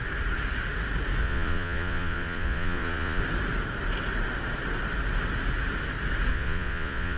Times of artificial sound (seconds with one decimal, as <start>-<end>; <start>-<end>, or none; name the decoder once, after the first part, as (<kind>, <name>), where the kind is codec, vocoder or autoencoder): 1.2-3.2 (vocoder, Vocos); 6.3-7.2